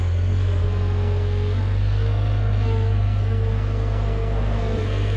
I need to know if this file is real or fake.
fake